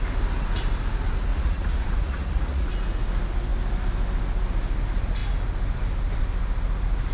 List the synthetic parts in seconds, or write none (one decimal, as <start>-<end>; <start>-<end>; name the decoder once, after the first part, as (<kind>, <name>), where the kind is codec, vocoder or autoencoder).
1.3-2.7 (vocoder, Vocos)

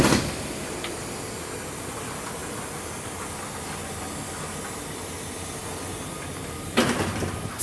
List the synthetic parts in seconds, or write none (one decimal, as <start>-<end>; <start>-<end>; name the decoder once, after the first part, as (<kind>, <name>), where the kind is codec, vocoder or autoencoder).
none

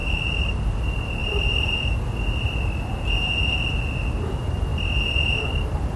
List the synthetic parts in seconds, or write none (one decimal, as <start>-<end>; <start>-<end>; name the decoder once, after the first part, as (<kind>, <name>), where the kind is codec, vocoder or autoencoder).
0.0-0.6 (vocoder, BigVGAN v2); 1.2-1.9

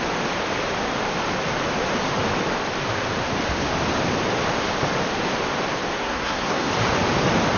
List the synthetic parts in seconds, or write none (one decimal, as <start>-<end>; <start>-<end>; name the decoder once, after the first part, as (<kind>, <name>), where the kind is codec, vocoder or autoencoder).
6.0-6.7 (codec, SNAC)